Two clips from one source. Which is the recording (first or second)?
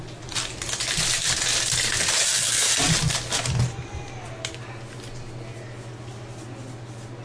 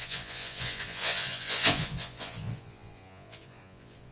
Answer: first